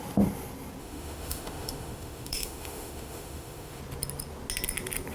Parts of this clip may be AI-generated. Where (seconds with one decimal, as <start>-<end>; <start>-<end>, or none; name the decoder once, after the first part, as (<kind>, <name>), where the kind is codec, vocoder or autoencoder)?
0.8-3.8 (autoencoder, DAC-VAE)